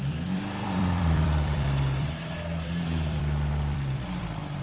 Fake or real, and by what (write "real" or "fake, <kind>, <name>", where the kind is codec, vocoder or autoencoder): fake, vocoder, BigVGAN v2